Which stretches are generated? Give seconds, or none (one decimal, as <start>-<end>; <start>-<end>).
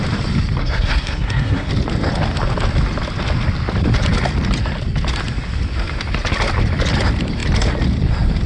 0.6-1.7